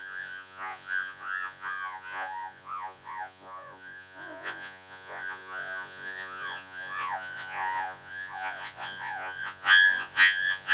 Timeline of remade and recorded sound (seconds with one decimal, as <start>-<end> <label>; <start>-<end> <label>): 0.0-10.7 remade